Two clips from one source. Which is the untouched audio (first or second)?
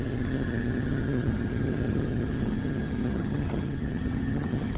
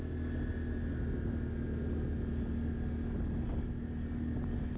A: second